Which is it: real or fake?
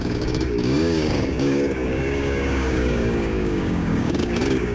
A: fake